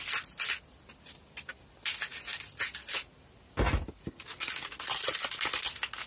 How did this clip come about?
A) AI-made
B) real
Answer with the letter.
B